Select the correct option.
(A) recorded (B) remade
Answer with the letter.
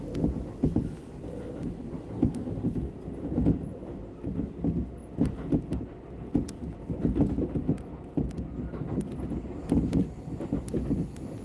A